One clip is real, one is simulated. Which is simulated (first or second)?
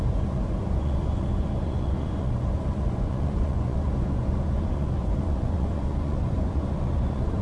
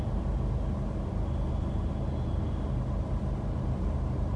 first